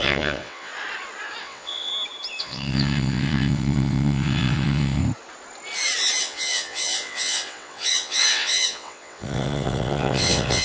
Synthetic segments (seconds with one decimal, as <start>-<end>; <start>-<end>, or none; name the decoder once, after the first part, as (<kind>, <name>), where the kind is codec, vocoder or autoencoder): 0.0-0.7 (vocoder, WaveNeXt); 1.4-1.9; 2.4-5.0; 6.2-10.6